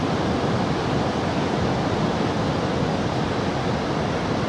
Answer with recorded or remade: recorded